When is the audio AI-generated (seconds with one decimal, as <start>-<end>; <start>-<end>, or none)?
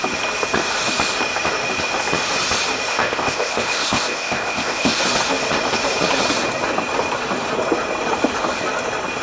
2.9-5.0